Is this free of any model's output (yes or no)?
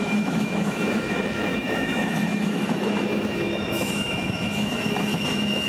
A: no